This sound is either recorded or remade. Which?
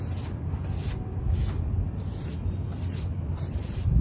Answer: recorded